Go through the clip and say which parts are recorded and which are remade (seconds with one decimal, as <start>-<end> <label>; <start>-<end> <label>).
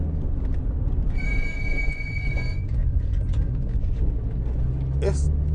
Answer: 0.0-1.9 recorded; 1.9-4.1 remade; 4.1-5.5 recorded